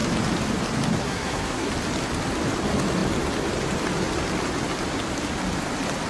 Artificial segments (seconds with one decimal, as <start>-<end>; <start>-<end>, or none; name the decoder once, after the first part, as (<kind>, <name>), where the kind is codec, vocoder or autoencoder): 1.0-1.7 (codec, SNAC)